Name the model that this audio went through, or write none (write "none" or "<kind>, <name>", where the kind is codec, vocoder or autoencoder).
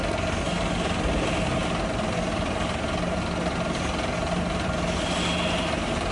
none